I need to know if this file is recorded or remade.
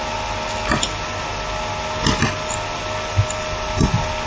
recorded